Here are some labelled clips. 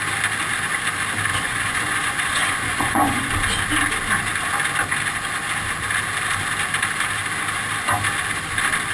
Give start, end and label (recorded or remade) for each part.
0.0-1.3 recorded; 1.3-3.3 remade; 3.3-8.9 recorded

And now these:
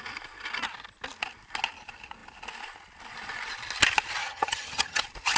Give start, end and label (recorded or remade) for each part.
0.0-4.2 recorded; 4.2-5.0 remade; 5.0-5.4 recorded

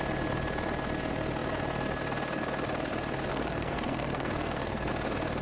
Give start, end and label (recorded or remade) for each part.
0.0-3.3 recorded; 3.3-4.9 remade; 4.9-5.4 recorded

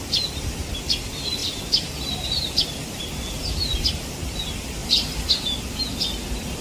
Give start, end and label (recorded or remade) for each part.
0.0-1.4 recorded; 1.4-1.9 remade; 1.9-4.8 recorded; 4.8-5.3 remade; 5.3-6.6 recorded

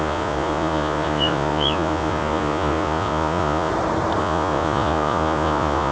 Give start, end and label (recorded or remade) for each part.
0.0-3.7 remade; 3.7-4.2 recorded; 4.2-5.9 remade